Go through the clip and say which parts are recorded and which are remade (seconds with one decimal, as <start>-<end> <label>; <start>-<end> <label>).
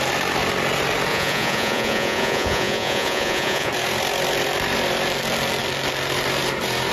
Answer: 0.0-1.1 recorded; 1.1-3.7 remade; 3.7-6.9 recorded